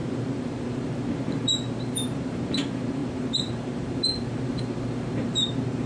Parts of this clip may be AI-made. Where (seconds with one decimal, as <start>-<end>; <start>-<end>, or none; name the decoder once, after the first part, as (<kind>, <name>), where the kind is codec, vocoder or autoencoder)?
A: 0.0-5.9 (vocoder, BigVGAN v2)